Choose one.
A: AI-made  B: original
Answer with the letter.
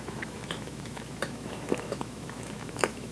A